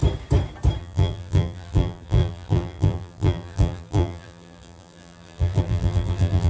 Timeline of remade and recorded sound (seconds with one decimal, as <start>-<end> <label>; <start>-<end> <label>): 0.0-0.8 recorded; 0.8-6.5 remade